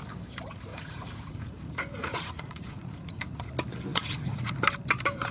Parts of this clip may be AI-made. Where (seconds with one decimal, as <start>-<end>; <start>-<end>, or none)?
0.7-3.5; 3.9-4.5